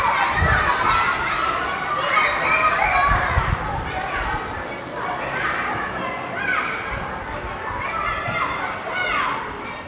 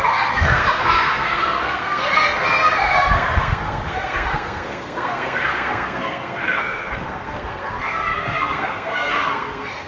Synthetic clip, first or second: second